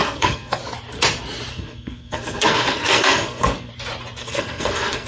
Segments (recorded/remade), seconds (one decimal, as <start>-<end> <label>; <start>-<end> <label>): 0.0-0.6 remade; 0.6-1.5 recorded; 1.5-3.7 remade; 3.7-4.2 recorded; 4.2-5.1 remade